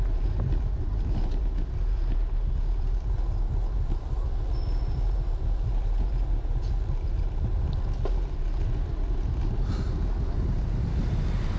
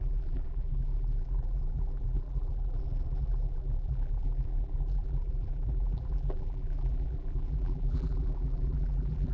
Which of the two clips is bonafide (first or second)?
first